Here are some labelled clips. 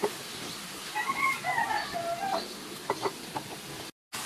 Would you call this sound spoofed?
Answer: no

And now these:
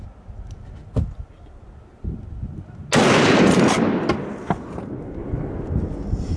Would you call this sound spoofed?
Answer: no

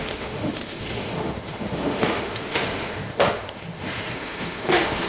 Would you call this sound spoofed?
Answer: yes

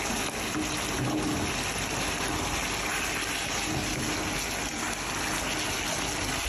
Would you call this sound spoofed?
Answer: no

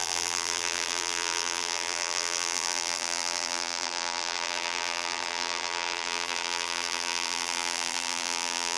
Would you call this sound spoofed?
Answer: yes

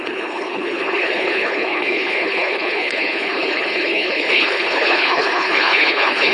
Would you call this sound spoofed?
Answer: yes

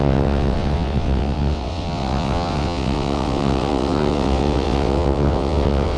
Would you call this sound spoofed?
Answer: yes